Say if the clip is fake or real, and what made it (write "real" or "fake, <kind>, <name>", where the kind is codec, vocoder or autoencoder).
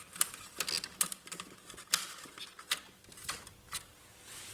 real